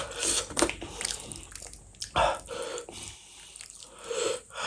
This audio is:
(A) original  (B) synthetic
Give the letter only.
A